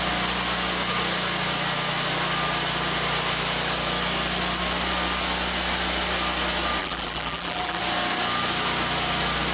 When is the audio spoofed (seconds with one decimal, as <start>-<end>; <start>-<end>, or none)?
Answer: 6.8-7.8